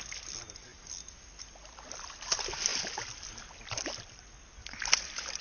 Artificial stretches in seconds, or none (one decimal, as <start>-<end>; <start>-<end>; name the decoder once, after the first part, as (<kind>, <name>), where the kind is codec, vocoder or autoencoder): none